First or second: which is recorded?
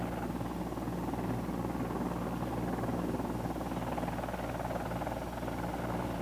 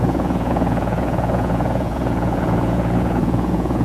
first